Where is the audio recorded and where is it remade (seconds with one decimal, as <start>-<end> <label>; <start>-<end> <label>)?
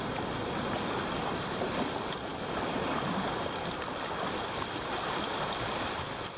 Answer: 0.0-6.4 recorded